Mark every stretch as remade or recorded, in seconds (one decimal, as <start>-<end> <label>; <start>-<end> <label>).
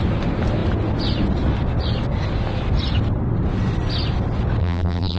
0.0-4.6 recorded; 4.6-5.2 remade